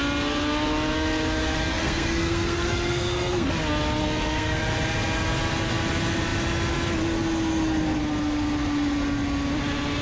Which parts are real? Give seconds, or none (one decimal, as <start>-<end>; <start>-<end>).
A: 0.0-1.7; 3.5-4.0; 4.6-10.0